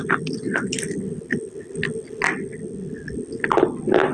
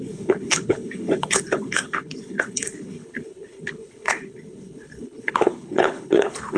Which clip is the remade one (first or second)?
second